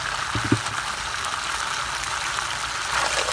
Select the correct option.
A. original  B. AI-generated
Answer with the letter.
A